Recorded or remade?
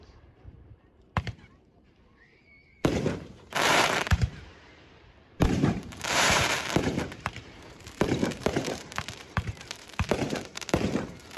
remade